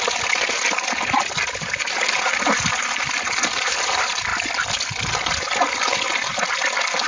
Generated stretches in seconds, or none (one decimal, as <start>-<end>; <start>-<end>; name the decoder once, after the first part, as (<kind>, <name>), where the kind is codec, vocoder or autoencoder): none